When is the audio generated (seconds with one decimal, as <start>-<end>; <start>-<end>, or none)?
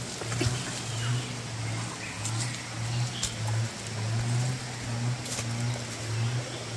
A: none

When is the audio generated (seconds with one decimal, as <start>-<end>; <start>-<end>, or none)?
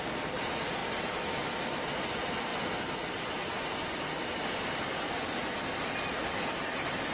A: none